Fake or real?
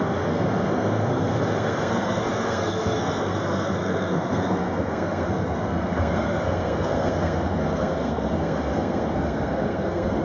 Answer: fake